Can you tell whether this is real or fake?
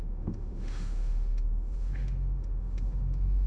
fake